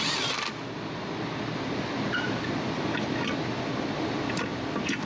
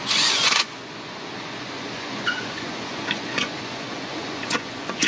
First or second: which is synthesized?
second